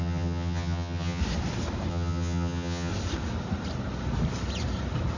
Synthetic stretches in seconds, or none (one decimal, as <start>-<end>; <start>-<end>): 0.0-1.2; 1.9-2.9